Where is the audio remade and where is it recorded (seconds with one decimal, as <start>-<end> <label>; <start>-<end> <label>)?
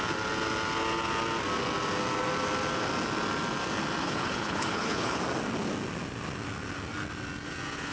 0.0-4.0 recorded; 4.0-5.2 remade; 5.2-7.9 recorded